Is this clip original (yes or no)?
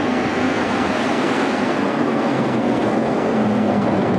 no